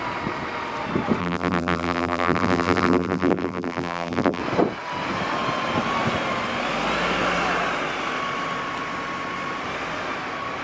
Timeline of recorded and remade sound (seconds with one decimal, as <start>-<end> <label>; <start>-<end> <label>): 0.0-1.2 recorded; 1.2-4.4 remade; 4.4-10.6 recorded